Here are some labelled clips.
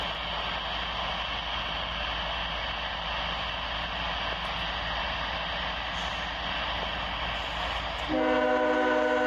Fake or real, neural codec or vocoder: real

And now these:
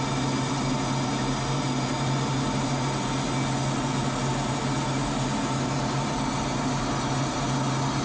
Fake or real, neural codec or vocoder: real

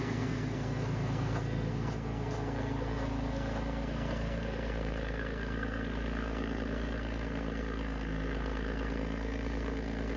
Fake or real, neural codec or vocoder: fake, codec, SNAC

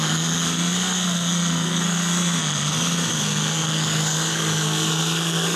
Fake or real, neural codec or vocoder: fake, codec, SNAC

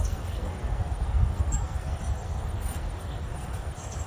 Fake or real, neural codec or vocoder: fake, codec, SNAC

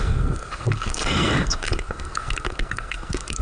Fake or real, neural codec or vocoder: fake, codec, SNAC